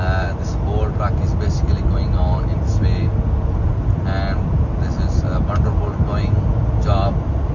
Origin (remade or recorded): recorded